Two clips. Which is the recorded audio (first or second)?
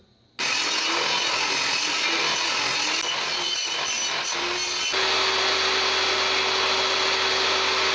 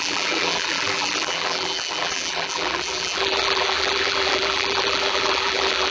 first